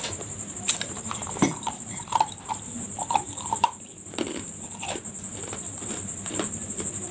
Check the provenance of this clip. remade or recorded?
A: remade